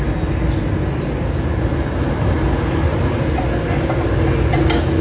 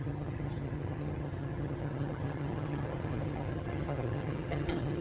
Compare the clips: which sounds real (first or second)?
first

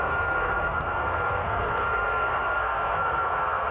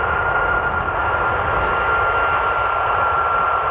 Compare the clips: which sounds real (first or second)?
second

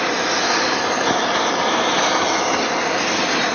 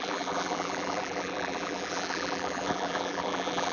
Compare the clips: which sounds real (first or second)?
first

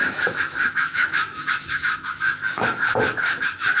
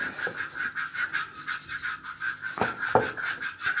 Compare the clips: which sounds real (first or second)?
second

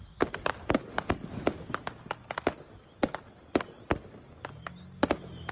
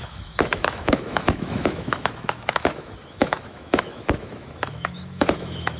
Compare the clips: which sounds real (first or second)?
first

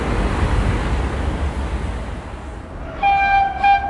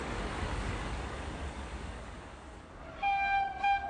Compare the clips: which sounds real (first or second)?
first